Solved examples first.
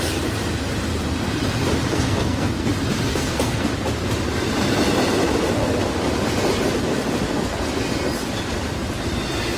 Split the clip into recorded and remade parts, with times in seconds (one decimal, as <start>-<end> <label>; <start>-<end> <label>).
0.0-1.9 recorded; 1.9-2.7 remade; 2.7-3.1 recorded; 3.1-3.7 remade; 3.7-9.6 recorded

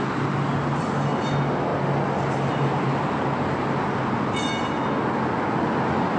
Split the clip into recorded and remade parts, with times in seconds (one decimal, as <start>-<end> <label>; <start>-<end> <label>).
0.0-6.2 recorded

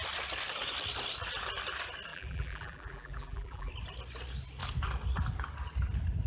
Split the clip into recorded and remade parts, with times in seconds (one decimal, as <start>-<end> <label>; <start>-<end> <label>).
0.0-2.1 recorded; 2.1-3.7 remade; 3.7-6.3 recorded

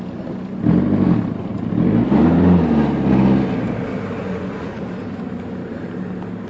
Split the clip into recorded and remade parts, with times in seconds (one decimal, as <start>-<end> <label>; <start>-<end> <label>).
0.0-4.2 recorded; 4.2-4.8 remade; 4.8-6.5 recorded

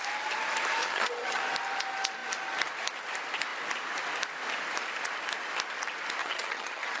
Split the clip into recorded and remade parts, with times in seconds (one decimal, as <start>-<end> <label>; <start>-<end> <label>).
0.0-0.8 recorded; 0.8-1.4 remade; 1.4-6.2 recorded; 6.2-7.0 remade

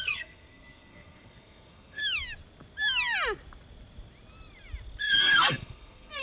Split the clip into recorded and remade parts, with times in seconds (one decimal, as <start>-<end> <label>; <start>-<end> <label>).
0.0-2.0 remade; 2.0-5.0 recorded; 5.0-6.2 remade

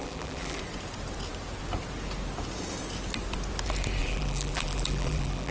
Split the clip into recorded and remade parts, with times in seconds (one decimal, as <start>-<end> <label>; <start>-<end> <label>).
0.0-0.6 remade; 0.6-4.0 recorded; 4.0-5.5 remade

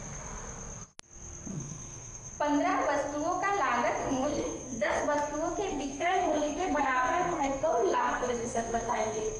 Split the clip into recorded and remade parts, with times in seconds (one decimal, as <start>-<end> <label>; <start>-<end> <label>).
0.0-1.5 recorded; 1.5-2.3 remade; 2.3-4.0 recorded; 4.0-5.0 remade; 5.0-5.7 recorded; 5.7-9.4 remade